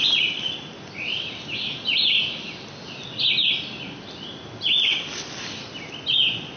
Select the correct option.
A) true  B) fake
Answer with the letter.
A